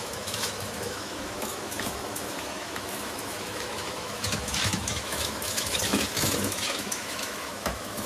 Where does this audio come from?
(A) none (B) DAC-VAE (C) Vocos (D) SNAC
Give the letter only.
B